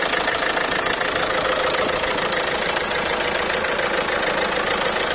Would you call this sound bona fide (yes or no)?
yes